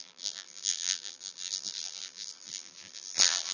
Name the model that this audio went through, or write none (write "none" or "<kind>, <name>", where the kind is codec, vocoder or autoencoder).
vocoder, BigVGAN v2